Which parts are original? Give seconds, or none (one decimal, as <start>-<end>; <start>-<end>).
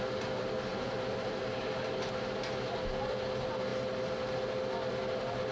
0.0-0.7; 1.4-5.5